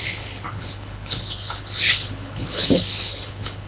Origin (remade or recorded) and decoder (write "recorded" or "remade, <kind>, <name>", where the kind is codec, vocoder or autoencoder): remade, codec, HILCodec